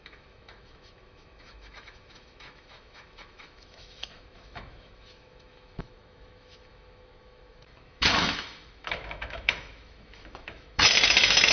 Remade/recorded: remade